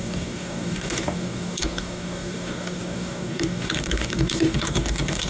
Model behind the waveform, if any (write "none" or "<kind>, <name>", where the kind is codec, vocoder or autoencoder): codec, DAC